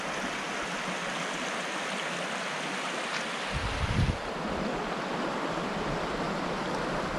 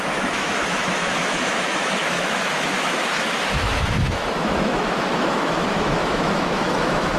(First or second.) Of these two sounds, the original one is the first